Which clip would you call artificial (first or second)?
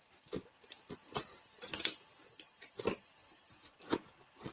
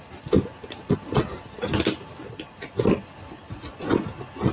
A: first